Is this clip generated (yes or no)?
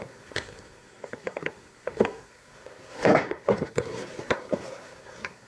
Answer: yes